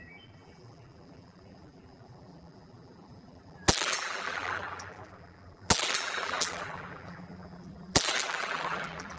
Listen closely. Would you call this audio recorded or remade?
remade